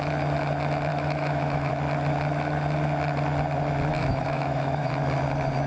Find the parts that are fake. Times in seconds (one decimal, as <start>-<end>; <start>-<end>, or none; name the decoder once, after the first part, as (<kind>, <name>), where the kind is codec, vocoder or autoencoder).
0.9-1.7 (autoencoder, DAC-VAE); 3.9-4.9